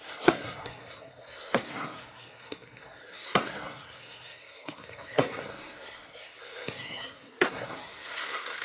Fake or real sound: fake